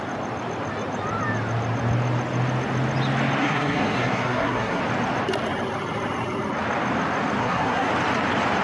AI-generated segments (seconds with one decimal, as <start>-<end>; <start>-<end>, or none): 3.4-4.8; 7.4-7.9